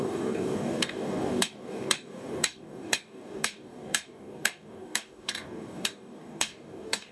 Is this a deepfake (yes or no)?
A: yes